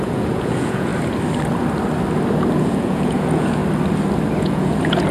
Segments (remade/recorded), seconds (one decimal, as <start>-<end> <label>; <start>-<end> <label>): 0.0-0.9 remade; 0.9-2.6 recorded; 2.6-3.6 remade; 3.6-4.4 recorded; 4.4-5.1 remade